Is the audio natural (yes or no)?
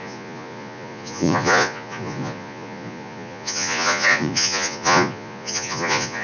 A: no